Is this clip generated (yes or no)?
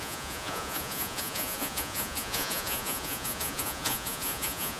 yes